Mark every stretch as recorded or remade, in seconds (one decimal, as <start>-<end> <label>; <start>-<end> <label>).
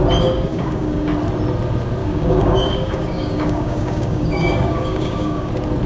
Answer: 0.0-0.5 recorded; 0.5-1.1 remade; 1.1-2.0 recorded; 2.0-5.5 remade; 5.5-5.9 recorded